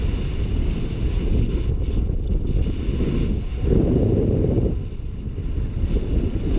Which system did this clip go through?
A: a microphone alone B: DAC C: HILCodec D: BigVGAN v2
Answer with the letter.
A